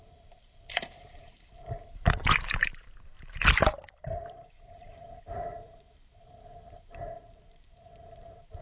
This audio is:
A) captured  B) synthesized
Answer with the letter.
B